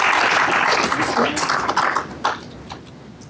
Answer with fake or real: real